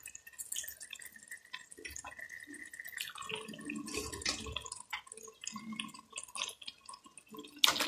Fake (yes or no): no